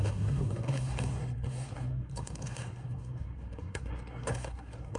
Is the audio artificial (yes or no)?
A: yes